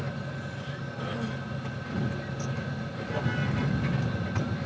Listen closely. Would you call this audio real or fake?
real